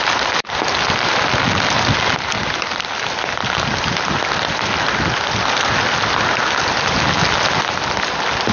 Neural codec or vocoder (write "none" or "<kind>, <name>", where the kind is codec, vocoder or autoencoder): none